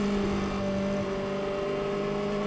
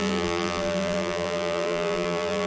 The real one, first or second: first